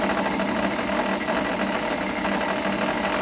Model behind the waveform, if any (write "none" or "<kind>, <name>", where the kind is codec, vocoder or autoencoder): none